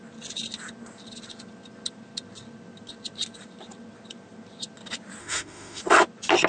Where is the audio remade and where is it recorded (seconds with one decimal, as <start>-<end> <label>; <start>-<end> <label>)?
0.0-5.2 recorded; 5.2-5.8 remade; 5.8-6.5 recorded